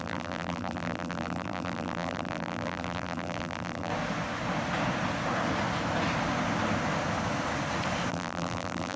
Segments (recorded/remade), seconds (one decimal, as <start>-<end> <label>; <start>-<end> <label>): 0.0-3.9 remade; 3.9-8.1 recorded; 8.1-9.0 remade